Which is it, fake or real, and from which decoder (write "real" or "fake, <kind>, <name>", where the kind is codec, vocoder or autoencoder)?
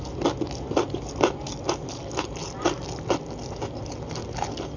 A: real